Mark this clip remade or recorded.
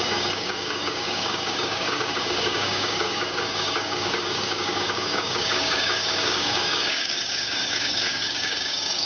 remade